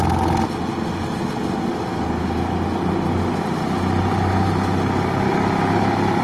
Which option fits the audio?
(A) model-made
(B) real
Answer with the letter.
B